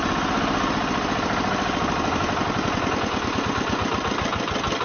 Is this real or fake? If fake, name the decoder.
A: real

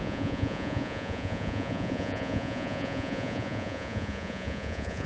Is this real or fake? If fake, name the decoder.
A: fake, vocoder, Vocos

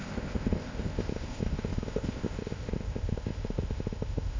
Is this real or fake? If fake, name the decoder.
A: fake, codec, ZipCodec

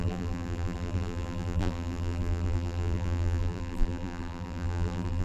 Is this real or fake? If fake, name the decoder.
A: fake, vocoder, BigVGAN v2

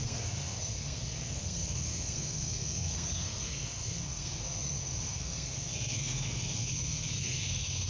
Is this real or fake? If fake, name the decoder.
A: fake, codec, SNAC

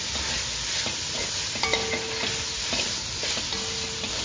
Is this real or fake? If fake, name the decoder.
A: real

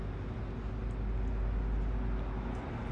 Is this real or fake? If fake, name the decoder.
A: real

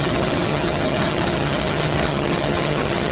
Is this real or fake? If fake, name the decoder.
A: fake, vocoder, HiFi-GAN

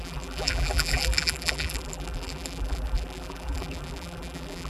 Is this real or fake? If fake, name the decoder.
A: fake, vocoder, BigVGAN v2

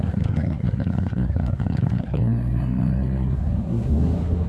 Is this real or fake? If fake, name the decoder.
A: fake, codec, SNAC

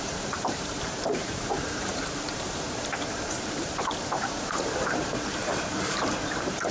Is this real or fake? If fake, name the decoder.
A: fake, vocoder, BigVGAN v2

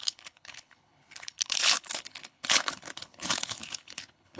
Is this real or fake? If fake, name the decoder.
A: fake, codec, HILCodec